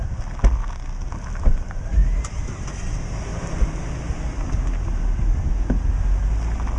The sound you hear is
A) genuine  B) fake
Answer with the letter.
A